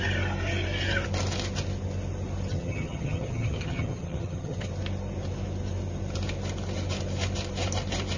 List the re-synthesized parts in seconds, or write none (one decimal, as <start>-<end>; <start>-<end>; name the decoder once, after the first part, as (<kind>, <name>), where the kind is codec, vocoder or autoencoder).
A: 2.5-4.7 (vocoder, HiFi-GAN)